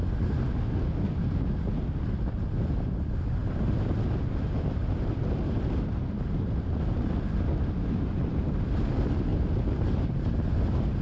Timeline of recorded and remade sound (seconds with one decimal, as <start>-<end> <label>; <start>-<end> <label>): 0.0-4.8 recorded; 4.8-5.3 remade; 5.3-9.3 recorded; 9.3-11.0 remade